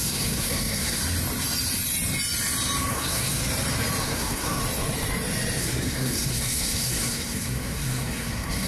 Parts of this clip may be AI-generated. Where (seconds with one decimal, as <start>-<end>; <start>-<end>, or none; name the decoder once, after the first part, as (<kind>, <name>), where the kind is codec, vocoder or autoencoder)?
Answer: 0.0-1.0 (codec, SNAC); 2.9-3.4; 4.0-4.6; 5.6-8.7